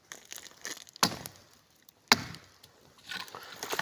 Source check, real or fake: real